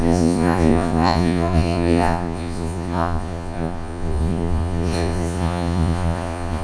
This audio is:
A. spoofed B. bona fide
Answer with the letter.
A